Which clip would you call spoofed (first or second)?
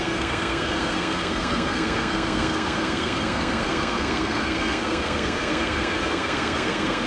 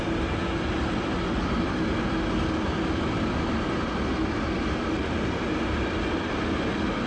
first